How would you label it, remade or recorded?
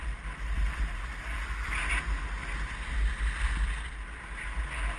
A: recorded